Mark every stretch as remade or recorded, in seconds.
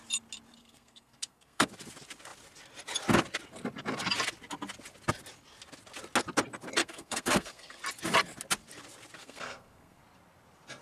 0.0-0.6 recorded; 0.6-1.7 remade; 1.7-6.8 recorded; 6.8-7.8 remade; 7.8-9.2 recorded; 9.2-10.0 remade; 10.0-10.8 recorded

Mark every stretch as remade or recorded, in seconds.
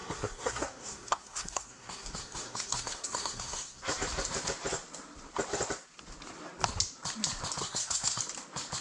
0.0-3.8 remade; 3.8-7.6 recorded; 7.6-8.2 remade; 8.2-8.8 recorded